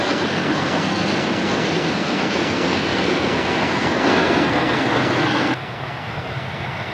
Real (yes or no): no